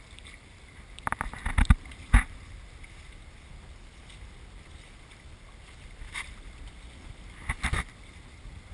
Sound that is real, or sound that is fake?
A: real